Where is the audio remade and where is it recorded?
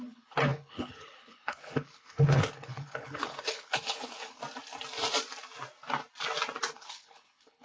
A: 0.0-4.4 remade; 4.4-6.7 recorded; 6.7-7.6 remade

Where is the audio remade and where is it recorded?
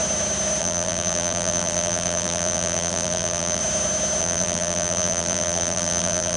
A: 0.0-0.6 recorded; 0.6-3.6 remade; 3.6-4.2 recorded; 4.2-6.4 remade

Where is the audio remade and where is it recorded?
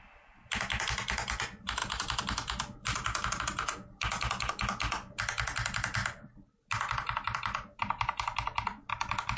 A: 0.0-1.8 recorded; 1.8-3.4 remade; 3.4-6.0 recorded; 6.0-6.6 remade; 6.6-9.4 recorded